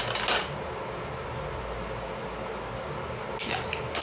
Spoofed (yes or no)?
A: no